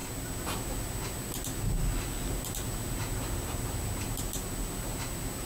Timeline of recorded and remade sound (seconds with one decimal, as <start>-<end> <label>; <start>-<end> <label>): 0.0-5.5 recorded